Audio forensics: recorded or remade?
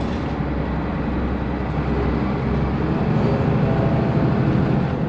recorded